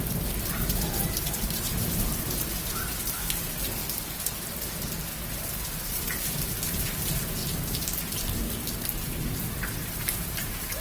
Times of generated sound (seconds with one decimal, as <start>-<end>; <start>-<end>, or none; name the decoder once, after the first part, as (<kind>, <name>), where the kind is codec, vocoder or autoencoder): 0.0-3.8 (vocoder, BigVGAN v2); 5.3-7.4; 8.9-10.8